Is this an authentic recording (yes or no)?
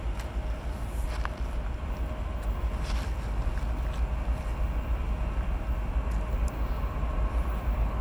yes